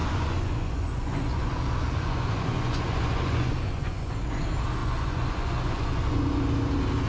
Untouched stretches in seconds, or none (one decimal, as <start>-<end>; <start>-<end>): 4.2-4.8; 6.4-7.1